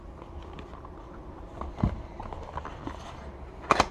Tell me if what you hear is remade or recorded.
recorded